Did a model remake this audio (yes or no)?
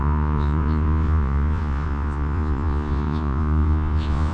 yes